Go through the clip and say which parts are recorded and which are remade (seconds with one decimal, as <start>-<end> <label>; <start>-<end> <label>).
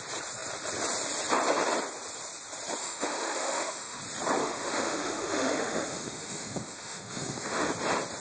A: 0.0-2.8 recorded; 2.8-4.0 remade; 4.0-4.4 recorded; 4.4-7.7 remade; 7.7-8.2 recorded